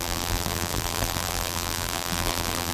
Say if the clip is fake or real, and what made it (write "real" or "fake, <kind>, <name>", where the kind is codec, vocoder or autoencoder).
fake, vocoder, BigVGAN v2